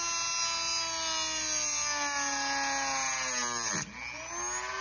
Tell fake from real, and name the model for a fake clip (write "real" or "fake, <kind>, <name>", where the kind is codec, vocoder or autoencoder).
real